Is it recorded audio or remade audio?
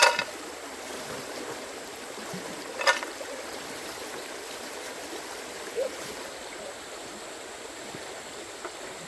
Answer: remade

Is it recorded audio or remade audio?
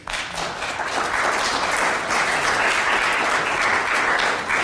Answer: recorded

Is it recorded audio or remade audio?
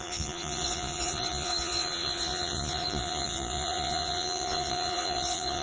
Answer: remade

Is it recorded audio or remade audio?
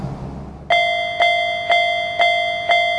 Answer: recorded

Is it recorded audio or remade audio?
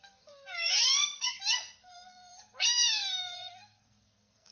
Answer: remade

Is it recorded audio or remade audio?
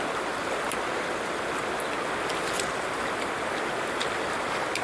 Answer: recorded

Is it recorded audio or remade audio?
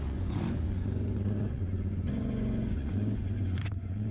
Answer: remade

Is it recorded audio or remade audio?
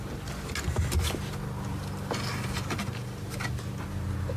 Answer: recorded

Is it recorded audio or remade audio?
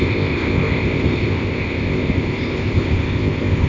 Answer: remade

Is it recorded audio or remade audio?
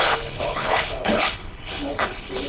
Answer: remade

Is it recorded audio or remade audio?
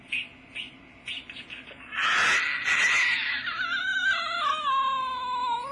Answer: recorded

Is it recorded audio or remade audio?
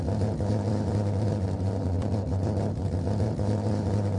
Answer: remade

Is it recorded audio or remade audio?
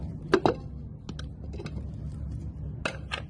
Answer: recorded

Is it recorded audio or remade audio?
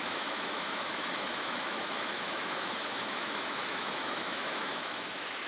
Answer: remade